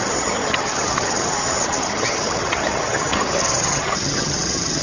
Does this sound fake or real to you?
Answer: fake